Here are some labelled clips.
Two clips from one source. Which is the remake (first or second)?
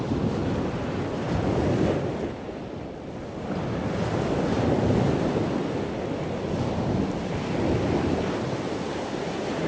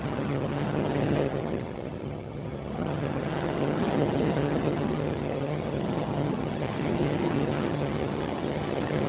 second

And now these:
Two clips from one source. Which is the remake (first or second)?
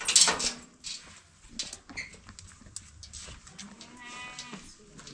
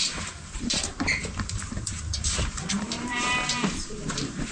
second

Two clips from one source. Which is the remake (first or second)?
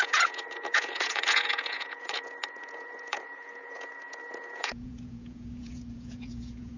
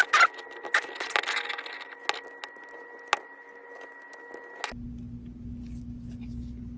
first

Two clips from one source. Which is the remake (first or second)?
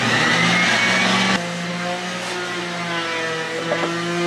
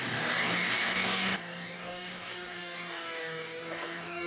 second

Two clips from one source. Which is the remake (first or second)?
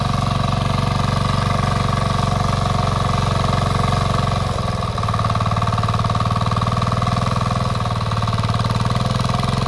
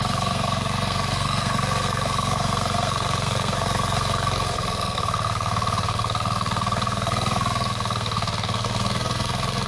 second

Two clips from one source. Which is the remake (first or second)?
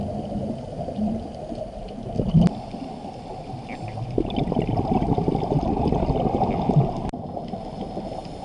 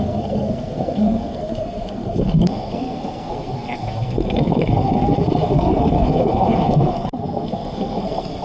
second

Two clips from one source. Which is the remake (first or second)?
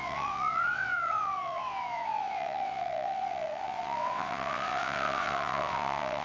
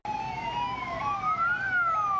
first